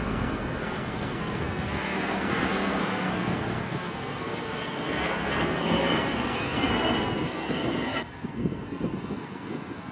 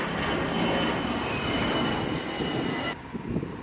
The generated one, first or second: first